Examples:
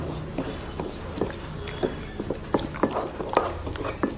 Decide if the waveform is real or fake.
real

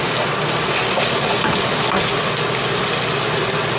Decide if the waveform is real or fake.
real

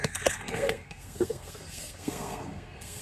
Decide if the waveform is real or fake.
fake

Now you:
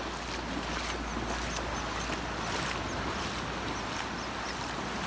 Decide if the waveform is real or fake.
real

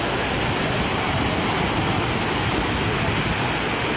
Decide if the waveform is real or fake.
real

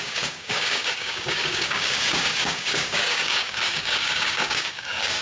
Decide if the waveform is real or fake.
fake